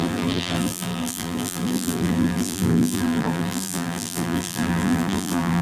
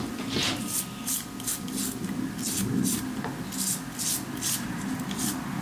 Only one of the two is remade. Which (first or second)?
first